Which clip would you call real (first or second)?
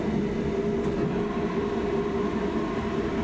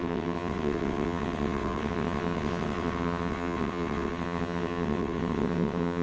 first